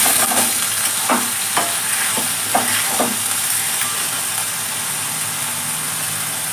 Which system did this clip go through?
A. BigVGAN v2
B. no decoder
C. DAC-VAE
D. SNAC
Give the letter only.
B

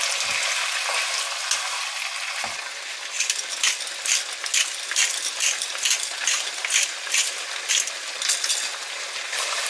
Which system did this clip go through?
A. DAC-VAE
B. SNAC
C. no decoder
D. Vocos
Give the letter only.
C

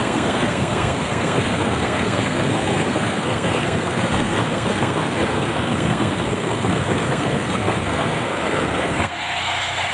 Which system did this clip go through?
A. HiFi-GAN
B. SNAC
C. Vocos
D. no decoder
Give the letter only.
B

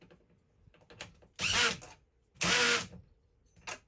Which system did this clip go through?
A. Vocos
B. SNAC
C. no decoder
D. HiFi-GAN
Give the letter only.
C